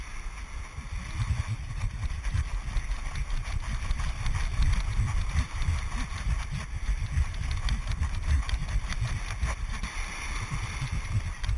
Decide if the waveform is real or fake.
real